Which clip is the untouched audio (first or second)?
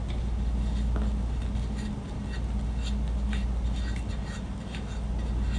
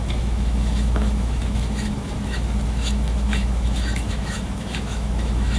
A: first